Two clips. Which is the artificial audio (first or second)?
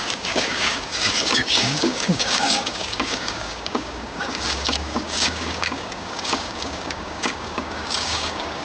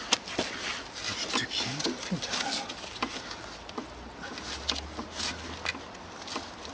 first